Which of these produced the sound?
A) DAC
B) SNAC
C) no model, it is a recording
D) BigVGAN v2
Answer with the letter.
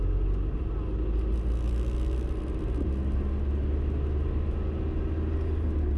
C